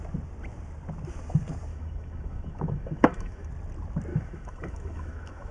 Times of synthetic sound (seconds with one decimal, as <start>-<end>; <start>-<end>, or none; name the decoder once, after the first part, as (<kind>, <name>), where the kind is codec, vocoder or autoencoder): 1.7-3.5 (autoencoder, DAC-VAE); 4.1-5.5